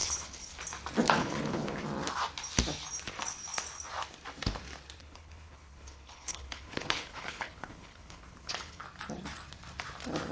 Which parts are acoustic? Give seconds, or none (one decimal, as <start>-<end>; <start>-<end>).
0.6-1.2; 1.8-5.0; 8.8-10.3